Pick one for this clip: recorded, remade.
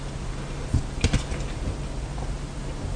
recorded